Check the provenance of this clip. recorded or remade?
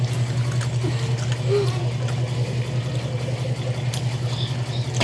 recorded